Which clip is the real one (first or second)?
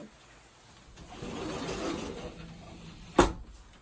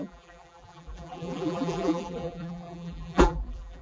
first